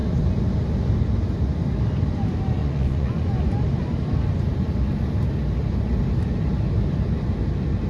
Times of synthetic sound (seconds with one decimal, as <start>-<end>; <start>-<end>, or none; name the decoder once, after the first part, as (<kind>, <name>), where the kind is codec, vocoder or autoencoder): 2.6-3.2 (vocoder, Vocos)